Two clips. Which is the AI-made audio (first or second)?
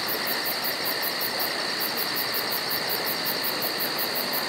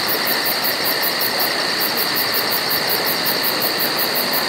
second